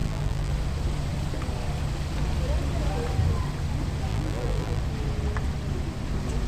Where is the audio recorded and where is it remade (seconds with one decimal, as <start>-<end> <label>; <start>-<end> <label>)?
0.0-0.5 remade; 0.5-4.1 recorded; 4.1-4.8 remade; 4.8-6.5 recorded